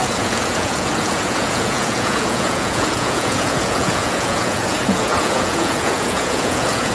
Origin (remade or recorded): remade